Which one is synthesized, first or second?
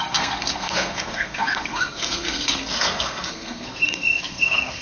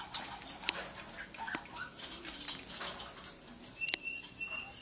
first